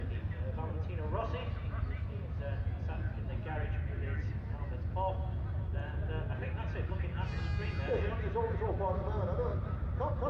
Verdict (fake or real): real